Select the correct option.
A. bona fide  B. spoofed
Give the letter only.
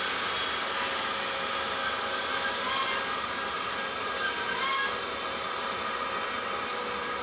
A